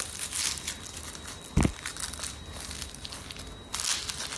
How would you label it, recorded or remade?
recorded